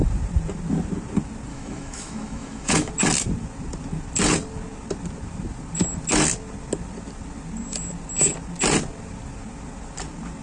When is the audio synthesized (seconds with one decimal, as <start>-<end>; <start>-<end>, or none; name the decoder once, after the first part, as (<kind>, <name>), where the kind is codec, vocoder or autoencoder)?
1.5-2.9 (autoencoder, DAC-VAE)